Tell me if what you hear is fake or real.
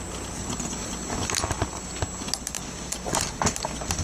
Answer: real